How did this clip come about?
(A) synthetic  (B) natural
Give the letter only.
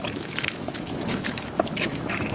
A